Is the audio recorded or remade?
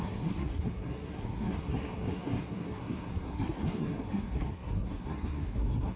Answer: remade